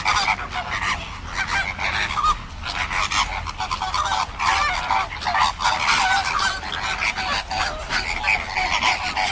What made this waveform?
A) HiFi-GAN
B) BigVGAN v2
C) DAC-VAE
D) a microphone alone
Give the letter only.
D